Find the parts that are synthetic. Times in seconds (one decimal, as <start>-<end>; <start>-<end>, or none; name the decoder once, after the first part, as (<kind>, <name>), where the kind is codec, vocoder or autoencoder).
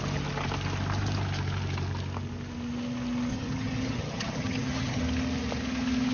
3.3-5.0 (vocoder, HiFi-GAN)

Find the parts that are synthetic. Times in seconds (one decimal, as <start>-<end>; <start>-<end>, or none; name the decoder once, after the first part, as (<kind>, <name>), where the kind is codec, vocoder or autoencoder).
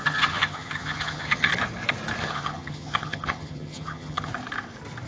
0.0-1.5 (vocoder, HiFi-GAN); 2.2-4.3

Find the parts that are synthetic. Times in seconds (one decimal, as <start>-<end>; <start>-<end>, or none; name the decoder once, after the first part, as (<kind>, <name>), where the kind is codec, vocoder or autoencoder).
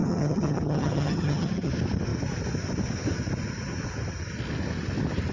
0.0-1.7 (vocoder, HiFi-GAN)